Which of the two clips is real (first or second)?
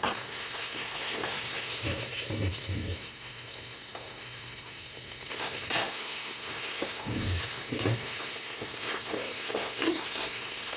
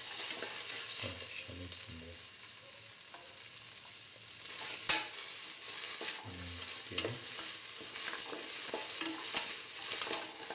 second